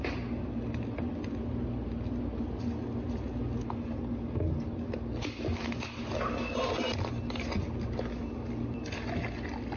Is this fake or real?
real